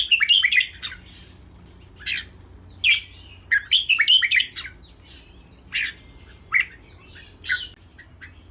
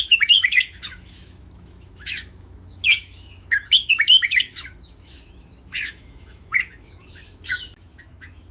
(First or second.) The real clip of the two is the first